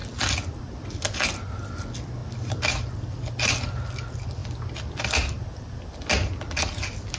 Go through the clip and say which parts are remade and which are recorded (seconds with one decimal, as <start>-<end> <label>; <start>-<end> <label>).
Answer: 0.0-7.2 recorded